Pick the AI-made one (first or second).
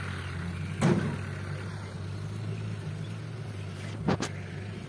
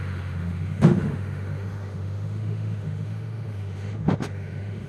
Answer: second